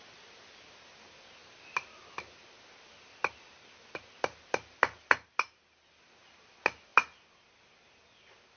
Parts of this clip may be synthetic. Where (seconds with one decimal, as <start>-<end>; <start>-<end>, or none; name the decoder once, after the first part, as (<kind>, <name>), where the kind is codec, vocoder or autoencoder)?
none

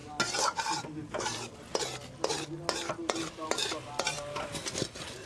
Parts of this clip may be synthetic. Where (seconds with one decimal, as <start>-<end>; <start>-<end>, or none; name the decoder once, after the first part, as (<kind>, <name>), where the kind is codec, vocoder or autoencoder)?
none

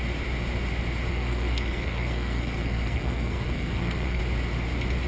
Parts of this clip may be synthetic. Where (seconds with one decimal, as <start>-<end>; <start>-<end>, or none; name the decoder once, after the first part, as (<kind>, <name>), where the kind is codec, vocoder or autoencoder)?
1.1-4.2 (codec, SNAC)

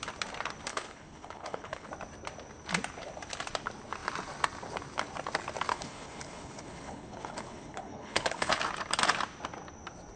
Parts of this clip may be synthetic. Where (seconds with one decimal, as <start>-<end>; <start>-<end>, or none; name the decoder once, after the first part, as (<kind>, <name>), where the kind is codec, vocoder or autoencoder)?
0.7-1.9 (codec, HILCodec); 5.7-8.6

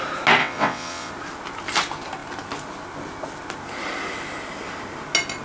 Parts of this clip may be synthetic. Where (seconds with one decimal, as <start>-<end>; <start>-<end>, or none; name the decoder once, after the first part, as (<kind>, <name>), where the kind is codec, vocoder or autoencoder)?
0.4-1.1 (vocoder, WaveNeXt)

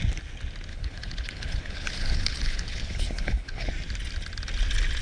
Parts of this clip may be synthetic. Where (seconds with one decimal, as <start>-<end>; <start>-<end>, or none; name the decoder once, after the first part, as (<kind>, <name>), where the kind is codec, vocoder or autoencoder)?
0.7-3.7 (codec, HILCodec)

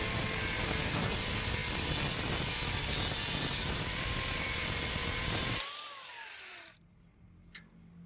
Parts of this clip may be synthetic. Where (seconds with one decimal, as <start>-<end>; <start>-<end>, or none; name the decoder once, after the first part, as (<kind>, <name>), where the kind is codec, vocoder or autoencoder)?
0.0-1.6 (vocoder, BigVGAN v2); 3.7-5.0